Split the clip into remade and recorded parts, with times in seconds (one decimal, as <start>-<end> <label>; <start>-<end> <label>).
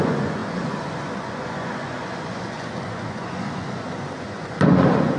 0.0-5.2 remade